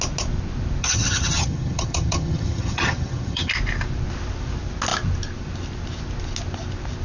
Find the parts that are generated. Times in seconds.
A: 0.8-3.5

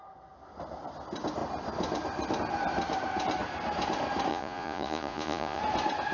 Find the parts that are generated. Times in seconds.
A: 4.3-5.6

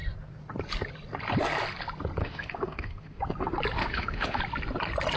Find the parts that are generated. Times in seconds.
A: 2.2-3.2; 3.8-4.4